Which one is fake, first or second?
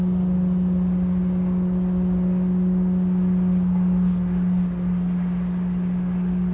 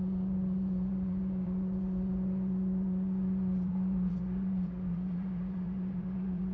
second